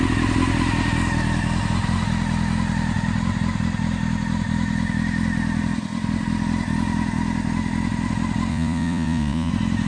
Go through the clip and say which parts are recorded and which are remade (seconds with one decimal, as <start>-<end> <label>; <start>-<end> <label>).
0.0-8.5 recorded; 8.5-9.5 remade; 9.5-9.9 recorded